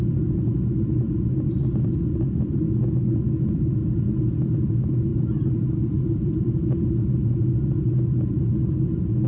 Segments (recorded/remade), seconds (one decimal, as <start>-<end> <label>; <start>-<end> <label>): 0.0-5.1 recorded; 5.1-6.9 remade; 6.9-9.3 recorded